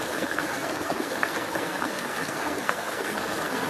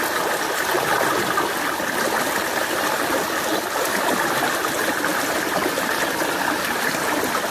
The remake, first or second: first